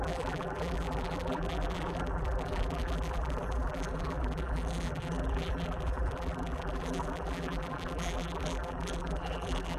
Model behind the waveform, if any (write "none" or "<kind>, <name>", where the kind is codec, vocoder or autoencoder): vocoder, BigVGAN v2